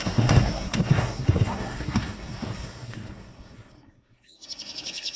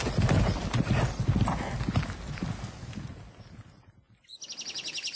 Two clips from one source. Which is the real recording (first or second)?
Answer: second